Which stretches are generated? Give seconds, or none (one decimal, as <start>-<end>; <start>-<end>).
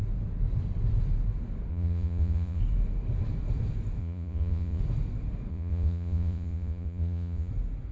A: 1.7-2.6; 4.0-4.8; 5.5-7.5